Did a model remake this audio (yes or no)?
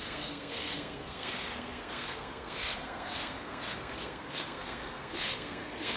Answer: yes